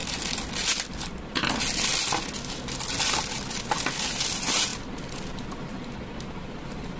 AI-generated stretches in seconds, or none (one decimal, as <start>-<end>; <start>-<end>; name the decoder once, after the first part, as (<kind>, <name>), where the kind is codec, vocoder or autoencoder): none